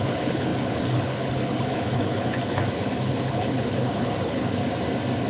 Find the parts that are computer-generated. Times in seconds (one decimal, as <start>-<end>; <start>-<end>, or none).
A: 0.0-4.6